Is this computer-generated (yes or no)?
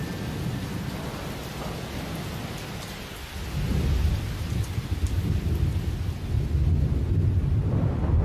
no